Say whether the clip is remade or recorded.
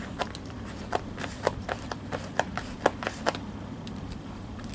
remade